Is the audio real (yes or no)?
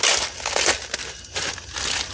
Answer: yes